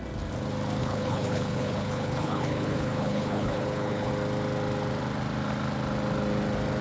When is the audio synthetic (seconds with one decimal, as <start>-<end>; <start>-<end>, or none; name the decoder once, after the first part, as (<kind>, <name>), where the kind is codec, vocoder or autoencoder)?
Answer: 0.8-4.1 (codec, HILCodec)